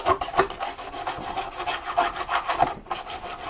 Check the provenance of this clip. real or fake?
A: real